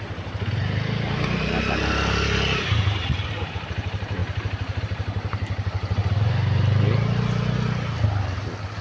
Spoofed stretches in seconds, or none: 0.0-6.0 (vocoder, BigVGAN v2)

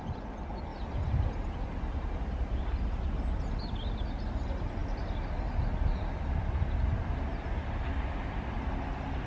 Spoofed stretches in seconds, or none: none